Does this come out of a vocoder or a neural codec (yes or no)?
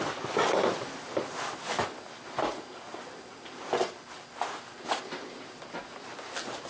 no